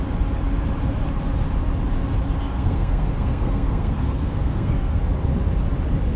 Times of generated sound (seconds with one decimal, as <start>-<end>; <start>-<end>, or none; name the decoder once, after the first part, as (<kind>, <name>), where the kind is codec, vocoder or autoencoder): 2.5-5.0 (codec, SNAC)